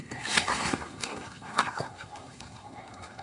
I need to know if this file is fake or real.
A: fake